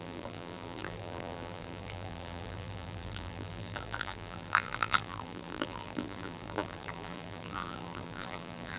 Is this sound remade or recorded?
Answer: remade